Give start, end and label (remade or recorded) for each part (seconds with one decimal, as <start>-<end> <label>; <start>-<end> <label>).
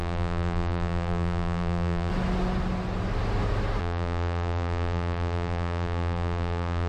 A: 0.0-2.1 remade; 2.1-3.8 recorded; 3.8-6.9 remade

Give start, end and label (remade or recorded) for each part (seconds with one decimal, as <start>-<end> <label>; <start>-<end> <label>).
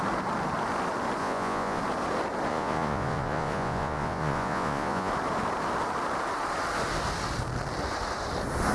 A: 0.0-1.2 recorded; 1.2-1.8 remade; 1.8-2.5 recorded; 2.5-5.1 remade; 5.1-8.7 recorded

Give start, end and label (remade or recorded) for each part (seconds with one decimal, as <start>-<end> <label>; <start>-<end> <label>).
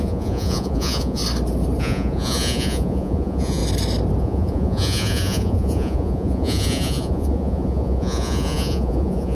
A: 0.0-1.2 remade; 1.2-1.8 recorded; 1.8-3.6 remade; 3.6-4.2 recorded; 4.2-9.3 remade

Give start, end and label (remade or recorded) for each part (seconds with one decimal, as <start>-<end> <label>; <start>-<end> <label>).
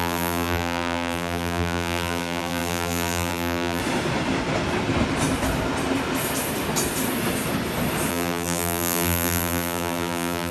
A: 0.0-3.8 remade; 3.8-8.1 recorded; 8.1-10.5 remade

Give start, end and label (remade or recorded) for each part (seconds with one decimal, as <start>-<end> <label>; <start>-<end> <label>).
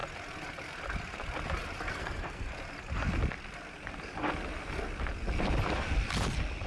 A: 0.0-1.9 recorded; 1.9-2.5 remade; 2.5-6.7 recorded